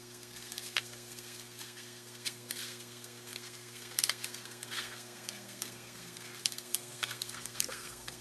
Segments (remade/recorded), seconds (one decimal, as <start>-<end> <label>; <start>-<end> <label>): 0.0-8.2 remade